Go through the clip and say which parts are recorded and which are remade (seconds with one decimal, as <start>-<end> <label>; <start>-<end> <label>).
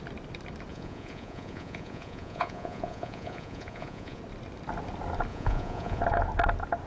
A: 0.0-0.7 recorded; 0.7-4.2 remade; 4.2-5.3 recorded; 5.3-6.0 remade; 6.0-6.9 recorded